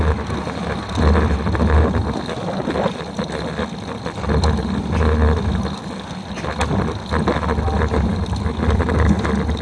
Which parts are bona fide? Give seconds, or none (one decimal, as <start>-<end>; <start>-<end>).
0.0-9.6

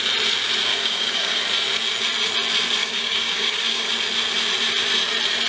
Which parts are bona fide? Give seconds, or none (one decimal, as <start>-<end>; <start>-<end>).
0.0-0.7; 1.4-2.8; 3.9-5.5

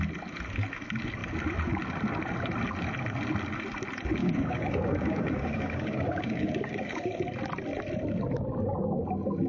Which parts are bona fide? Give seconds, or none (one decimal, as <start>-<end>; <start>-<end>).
0.0-4.2; 7.2-9.5

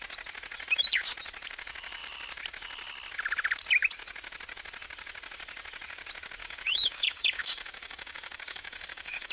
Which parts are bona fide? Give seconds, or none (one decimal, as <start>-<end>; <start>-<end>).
0.0-6.4

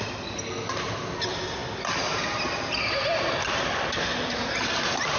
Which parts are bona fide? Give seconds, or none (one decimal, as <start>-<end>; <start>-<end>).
0.0-5.2

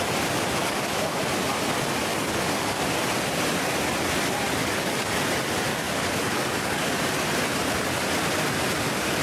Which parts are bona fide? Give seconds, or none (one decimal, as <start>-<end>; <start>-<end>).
0.0-0.6; 1.2-2.1; 2.8-4.6; 5.1-5.7; 6.8-9.2

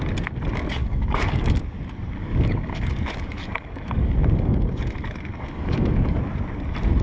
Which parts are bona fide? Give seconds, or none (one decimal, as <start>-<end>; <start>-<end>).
0.0-0.8; 1.6-2.2; 6.2-7.0

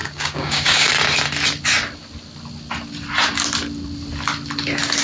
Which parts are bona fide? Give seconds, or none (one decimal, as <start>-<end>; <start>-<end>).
0.9-5.0